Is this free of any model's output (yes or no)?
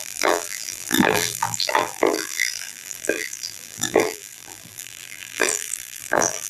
no